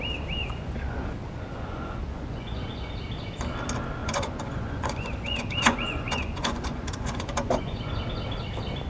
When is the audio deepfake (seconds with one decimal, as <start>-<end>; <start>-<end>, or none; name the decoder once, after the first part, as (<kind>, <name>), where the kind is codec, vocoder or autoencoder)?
0.4-2.9 (vocoder, Vocos); 4.0-7.9